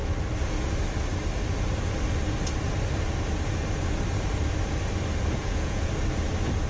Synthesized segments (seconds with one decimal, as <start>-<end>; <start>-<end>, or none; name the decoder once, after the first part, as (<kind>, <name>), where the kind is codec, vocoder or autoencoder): 5.4-5.9 (vocoder, Vocos)